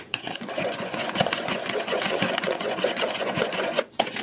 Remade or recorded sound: remade